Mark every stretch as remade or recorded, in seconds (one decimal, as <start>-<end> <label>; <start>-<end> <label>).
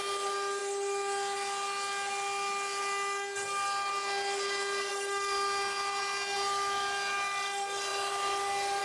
0.0-8.8 recorded